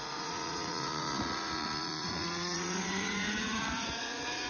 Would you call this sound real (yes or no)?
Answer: no